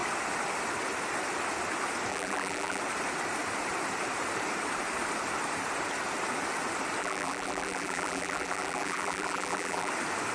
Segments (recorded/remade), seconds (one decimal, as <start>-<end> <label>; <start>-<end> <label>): 0.0-2.1 recorded; 2.1-2.8 remade; 2.8-7.0 recorded; 7.0-9.9 remade; 9.9-10.3 recorded